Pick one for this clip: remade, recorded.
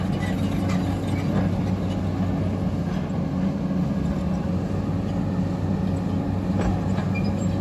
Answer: recorded